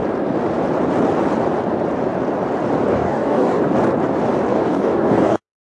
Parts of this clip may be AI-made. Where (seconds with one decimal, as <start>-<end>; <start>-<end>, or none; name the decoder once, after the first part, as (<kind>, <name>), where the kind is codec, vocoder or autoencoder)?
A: 2.9-3.6 (codec, DAC); 4.5-5.6